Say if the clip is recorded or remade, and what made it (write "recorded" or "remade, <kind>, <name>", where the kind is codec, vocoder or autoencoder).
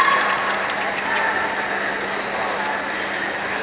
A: recorded